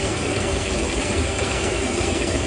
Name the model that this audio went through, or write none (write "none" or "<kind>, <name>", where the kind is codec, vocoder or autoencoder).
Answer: codec, SNAC